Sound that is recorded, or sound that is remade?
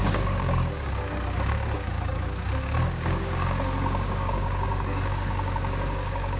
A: remade